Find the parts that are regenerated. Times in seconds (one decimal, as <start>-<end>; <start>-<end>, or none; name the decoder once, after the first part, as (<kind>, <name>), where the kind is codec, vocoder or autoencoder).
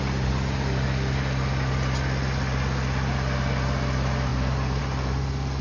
none